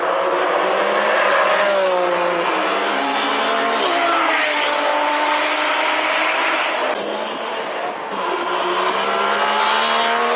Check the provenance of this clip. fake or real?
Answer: real